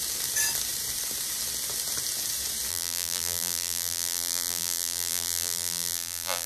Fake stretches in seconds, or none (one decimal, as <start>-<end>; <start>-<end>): 2.7-6.5